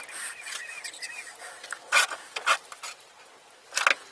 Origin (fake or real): real